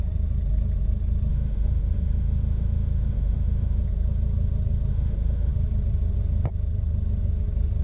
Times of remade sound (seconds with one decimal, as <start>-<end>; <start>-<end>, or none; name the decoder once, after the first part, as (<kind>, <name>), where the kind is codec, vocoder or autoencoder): 1.3-3.8 (autoencoder, DAC-VAE); 4.9-5.5